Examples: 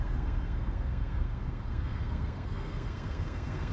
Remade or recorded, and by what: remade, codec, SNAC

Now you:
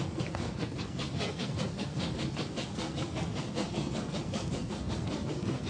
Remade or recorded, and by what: remade, codec, SNAC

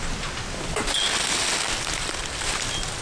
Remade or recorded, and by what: recorded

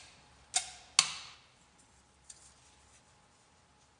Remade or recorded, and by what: recorded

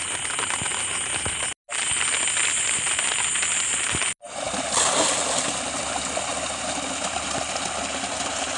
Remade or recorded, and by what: recorded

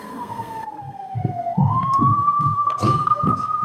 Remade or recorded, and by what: remade, codec, SNAC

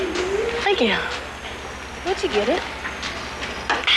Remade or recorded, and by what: recorded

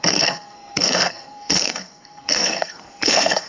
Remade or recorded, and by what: remade, codec, SNAC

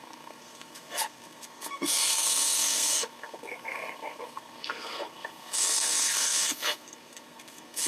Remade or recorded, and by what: remade, codec, SNAC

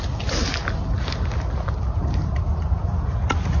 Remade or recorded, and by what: recorded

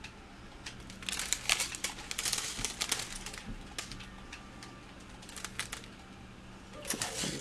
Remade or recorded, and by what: recorded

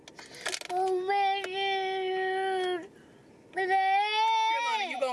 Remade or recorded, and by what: recorded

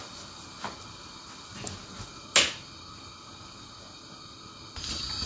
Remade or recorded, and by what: recorded